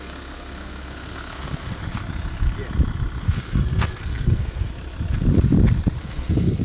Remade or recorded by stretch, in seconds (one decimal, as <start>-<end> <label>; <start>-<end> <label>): 0.0-1.8 remade; 1.8-3.2 recorded; 3.2-4.7 remade; 4.7-6.0 recorded; 6.0-6.6 remade